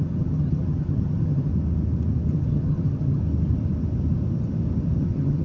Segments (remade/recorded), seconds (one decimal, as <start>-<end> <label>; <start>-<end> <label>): 0.0-1.5 remade; 1.5-2.3 recorded; 2.3-3.2 remade; 3.2-5.0 recorded; 5.0-5.4 remade